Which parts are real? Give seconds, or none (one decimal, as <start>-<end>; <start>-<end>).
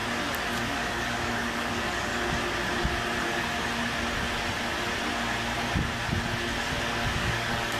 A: 0.0-0.9; 2.1-6.8